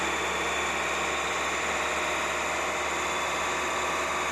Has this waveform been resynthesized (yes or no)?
no